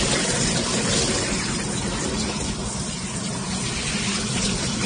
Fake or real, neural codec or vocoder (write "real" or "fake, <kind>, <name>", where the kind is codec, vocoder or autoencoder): real